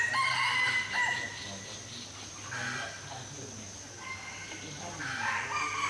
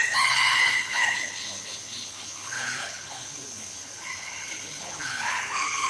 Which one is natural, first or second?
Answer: first